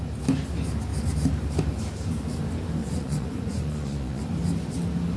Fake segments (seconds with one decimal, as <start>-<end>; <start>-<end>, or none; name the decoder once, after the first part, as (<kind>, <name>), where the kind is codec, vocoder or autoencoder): 2.8-4.2 (vocoder, Vocos)